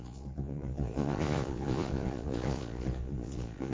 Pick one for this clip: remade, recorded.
remade